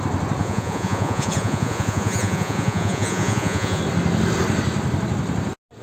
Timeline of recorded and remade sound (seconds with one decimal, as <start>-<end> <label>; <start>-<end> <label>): 0.0-0.4 recorded; 0.4-3.8 remade; 3.8-5.8 recorded